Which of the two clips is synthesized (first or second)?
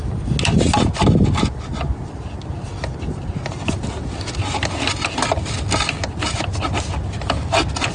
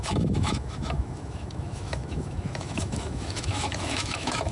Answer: second